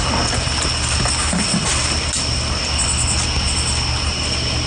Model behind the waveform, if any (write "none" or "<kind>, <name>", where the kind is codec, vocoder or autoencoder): none